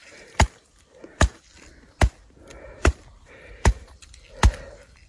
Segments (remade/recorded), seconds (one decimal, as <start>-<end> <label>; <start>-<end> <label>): 0.0-1.5 remade; 1.5-2.5 recorded; 2.5-4.1 remade; 4.1-5.1 recorded